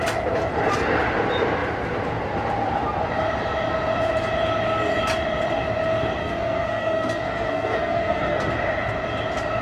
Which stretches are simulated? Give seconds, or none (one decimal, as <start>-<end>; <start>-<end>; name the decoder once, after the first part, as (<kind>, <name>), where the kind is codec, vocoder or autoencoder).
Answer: 6.2-8.5 (codec, SNAC)

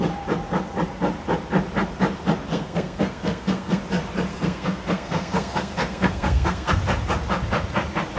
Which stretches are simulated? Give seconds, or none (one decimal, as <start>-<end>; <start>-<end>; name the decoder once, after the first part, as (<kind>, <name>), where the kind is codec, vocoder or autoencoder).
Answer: 2.5-3.8 (codec, SNAC); 4.3-6.8